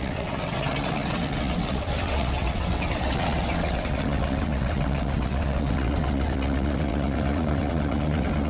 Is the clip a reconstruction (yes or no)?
yes